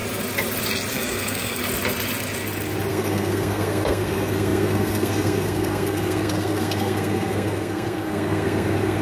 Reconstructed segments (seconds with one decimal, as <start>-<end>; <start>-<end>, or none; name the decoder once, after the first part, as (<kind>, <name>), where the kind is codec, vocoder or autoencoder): 0.9-1.6 (codec, SNAC); 2.9-9.0